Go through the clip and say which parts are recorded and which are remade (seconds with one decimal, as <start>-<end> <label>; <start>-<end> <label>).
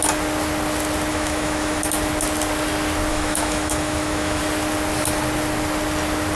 0.0-1.1 recorded; 1.1-1.8 remade; 1.8-3.1 recorded; 3.1-4.4 remade; 4.4-6.3 recorded